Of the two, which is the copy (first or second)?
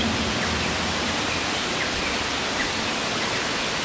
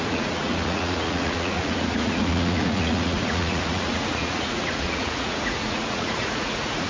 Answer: second